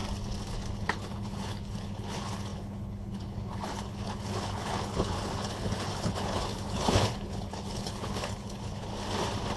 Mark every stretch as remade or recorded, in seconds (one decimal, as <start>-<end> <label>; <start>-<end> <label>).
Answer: 0.0-0.5 recorded; 0.5-8.9 remade; 8.9-9.6 recorded